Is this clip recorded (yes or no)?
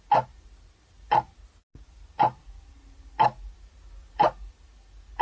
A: yes